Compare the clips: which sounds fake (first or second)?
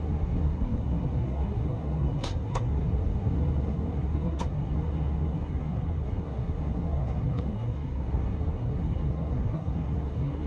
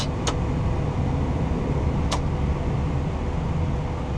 first